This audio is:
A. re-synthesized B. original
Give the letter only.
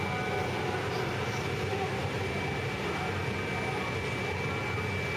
B